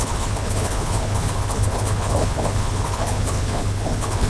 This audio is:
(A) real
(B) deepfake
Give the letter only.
B